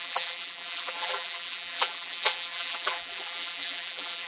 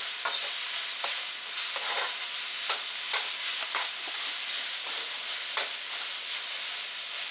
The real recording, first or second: second